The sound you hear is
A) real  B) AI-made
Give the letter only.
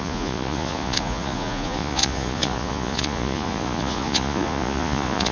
B